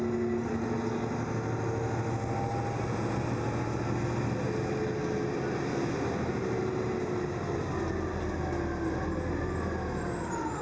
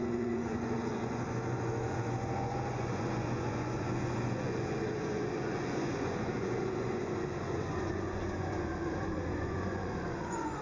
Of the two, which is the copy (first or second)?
second